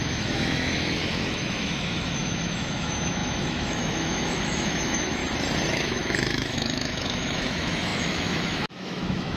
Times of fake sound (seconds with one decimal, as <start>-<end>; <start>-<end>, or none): 0.0-5.2; 5.7-9.4